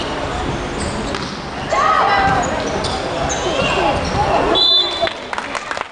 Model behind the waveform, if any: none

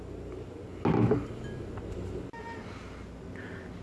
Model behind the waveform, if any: none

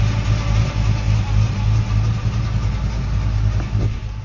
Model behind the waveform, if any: none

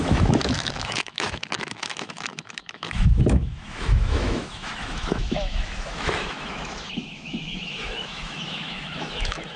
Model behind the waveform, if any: autoencoder, DAC-VAE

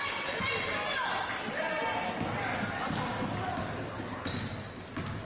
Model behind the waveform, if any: none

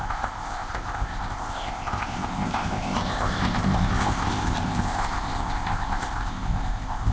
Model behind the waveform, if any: codec, ZipCodec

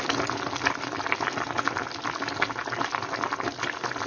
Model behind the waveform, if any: none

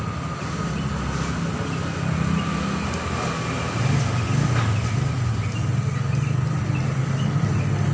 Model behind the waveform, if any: none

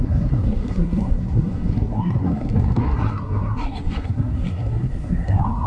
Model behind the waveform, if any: codec, SNAC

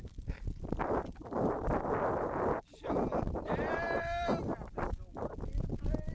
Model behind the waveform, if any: none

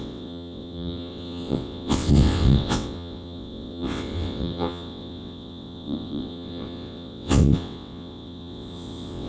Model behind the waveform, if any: vocoder, WaveNeXt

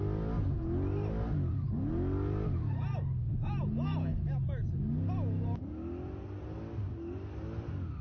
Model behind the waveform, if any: none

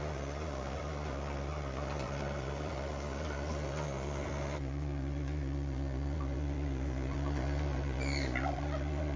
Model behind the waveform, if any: vocoder, Vocos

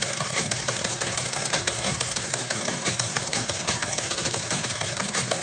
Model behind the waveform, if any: codec, SNAC